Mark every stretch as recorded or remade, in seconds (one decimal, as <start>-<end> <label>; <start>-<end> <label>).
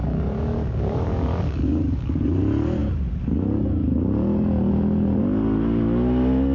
0.0-2.4 remade; 2.4-6.5 recorded